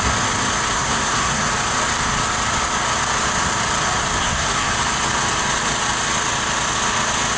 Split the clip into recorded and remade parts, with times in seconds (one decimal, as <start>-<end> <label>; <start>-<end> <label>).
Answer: 0.0-0.7 recorded; 0.7-1.5 remade; 1.5-4.2 recorded; 4.2-4.7 remade; 4.7-7.4 recorded

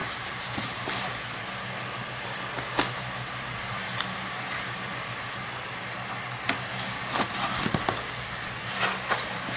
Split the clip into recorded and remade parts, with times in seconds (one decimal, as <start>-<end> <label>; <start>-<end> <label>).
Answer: 0.0-1.4 remade; 1.4-9.6 recorded

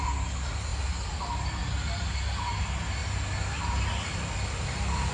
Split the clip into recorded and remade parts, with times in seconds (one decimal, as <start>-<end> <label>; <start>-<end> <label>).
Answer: 0.0-5.1 recorded

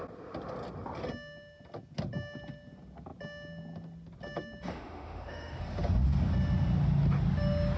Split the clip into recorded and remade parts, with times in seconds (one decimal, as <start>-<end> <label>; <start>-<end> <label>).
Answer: 0.0-4.7 recorded; 4.7-5.6 remade; 5.6-7.8 recorded

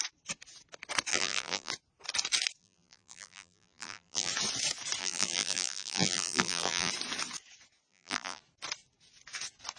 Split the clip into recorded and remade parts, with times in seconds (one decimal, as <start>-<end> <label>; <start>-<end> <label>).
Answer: 0.0-1.1 recorded; 1.1-1.7 remade; 1.7-2.6 recorded; 2.6-4.3 remade; 4.3-5.0 recorded; 5.0-6.9 remade; 6.9-7.9 recorded; 7.9-8.4 remade; 8.4-9.8 recorded

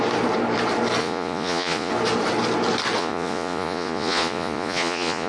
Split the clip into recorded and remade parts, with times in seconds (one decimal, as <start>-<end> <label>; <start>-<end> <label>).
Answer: 0.0-1.0 recorded; 1.0-1.9 remade; 1.9-3.0 recorded; 3.0-5.3 remade